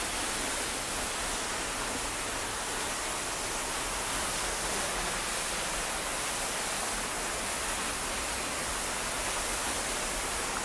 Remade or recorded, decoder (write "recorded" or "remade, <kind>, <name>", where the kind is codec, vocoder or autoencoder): recorded